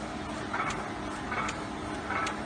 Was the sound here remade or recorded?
recorded